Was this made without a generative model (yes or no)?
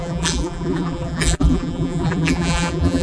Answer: no